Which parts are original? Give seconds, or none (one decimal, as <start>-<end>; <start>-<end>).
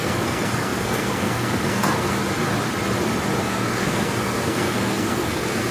2.2-3.4